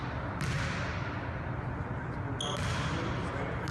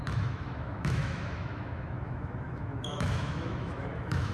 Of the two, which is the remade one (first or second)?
second